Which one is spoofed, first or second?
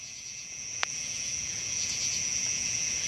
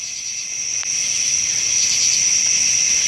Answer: first